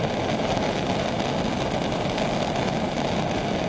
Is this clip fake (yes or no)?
no